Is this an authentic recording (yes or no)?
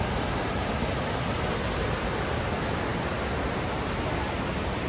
yes